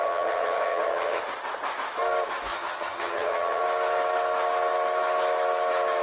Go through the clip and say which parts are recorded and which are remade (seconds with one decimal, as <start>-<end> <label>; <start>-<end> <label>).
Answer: 0.0-1.2 remade; 1.2-2.5 recorded; 2.5-3.6 remade; 3.6-6.0 recorded

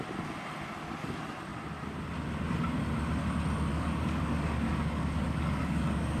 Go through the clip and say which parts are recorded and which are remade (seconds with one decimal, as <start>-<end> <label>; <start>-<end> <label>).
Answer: 0.0-3.7 recorded; 3.7-6.2 remade

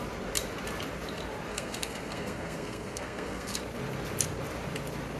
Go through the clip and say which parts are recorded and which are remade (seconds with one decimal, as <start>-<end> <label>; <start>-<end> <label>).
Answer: 0.0-1.5 recorded; 1.5-3.6 remade; 3.6-5.2 recorded

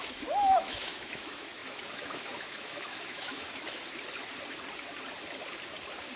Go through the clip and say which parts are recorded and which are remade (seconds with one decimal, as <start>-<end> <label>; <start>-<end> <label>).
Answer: 0.0-3.8 remade; 3.8-6.2 recorded